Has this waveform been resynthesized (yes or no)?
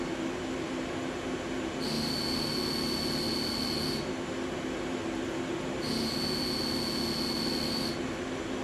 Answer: no